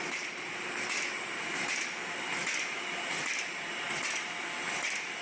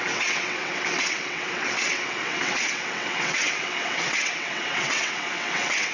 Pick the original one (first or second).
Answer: first